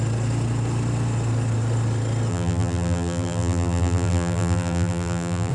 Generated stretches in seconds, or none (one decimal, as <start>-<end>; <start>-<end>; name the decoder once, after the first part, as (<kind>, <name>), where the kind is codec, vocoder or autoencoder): 2.3-5.5 (vocoder, BigVGAN v2)